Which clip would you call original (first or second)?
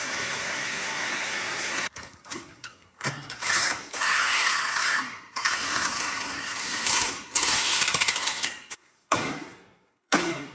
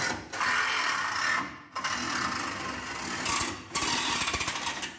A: second